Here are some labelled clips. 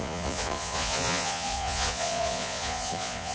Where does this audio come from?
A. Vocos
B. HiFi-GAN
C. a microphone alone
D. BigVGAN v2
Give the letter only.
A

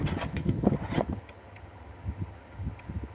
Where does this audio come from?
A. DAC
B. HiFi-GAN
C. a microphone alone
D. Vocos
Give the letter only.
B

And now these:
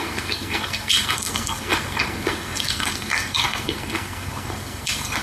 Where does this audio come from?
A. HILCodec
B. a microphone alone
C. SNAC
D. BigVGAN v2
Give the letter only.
C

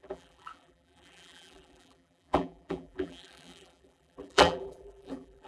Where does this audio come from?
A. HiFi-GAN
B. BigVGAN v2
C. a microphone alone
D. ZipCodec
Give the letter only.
B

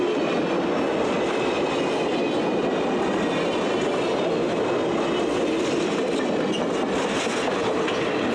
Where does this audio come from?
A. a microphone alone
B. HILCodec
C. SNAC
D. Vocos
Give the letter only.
A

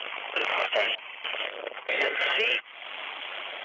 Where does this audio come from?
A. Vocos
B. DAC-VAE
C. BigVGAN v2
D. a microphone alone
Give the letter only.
D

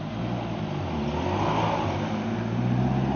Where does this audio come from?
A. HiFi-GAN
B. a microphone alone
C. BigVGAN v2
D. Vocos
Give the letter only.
B